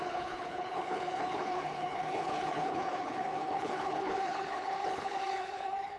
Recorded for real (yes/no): no